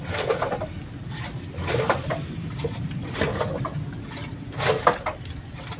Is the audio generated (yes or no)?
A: no